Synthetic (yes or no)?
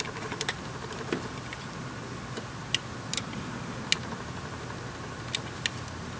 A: no